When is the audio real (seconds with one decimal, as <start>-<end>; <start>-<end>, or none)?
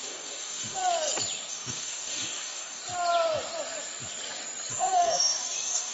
0.8-1.5; 2.8-4.7